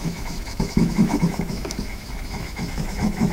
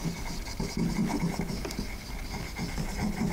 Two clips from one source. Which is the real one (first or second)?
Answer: second